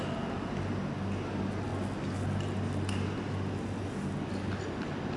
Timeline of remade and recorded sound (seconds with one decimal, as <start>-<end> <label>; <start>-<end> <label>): 0.0-5.2 recorded